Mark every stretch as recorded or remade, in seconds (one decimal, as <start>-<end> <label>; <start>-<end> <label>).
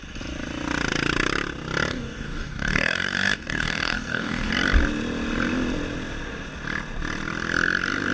0.0-1.9 recorded; 1.9-4.5 remade; 4.5-8.1 recorded